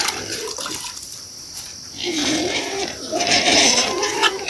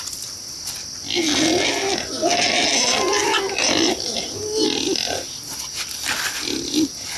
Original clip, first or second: second